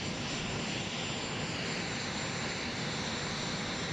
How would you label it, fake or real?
real